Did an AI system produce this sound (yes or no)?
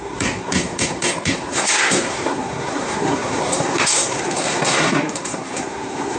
yes